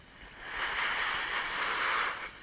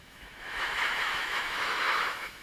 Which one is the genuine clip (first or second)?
first